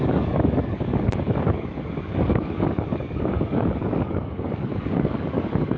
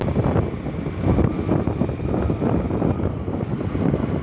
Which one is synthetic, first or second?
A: first